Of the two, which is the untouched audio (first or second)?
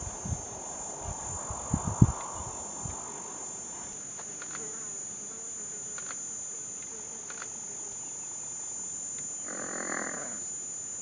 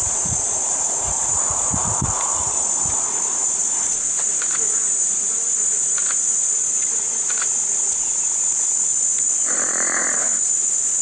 first